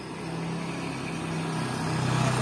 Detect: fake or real real